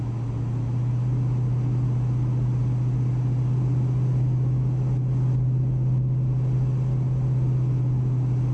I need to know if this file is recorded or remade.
recorded